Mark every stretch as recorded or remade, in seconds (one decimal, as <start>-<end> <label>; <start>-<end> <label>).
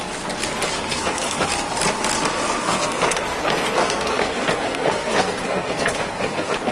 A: 0.0-0.9 recorded; 0.9-1.5 remade; 1.5-2.6 recorded; 2.6-6.7 remade